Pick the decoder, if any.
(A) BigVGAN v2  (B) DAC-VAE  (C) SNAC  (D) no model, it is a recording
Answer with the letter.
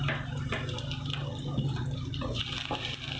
D